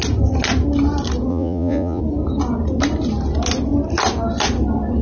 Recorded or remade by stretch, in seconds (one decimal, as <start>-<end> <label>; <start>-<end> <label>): 0.0-1.3 recorded; 1.3-2.0 remade; 2.0-5.0 recorded